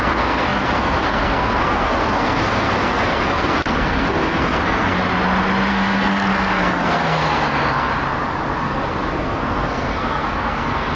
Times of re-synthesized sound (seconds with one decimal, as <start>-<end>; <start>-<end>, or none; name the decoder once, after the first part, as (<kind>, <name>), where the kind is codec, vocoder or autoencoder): 0.0-5.0 (codec, SNAC); 5.7-7.9; 8.6-10.9